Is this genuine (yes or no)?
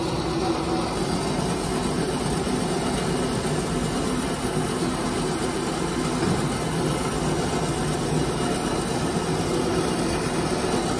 yes